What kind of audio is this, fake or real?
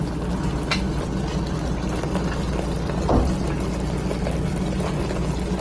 real